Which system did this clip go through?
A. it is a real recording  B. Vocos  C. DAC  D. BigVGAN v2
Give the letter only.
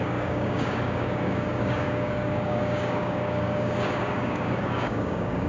C